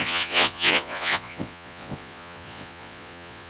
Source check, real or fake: fake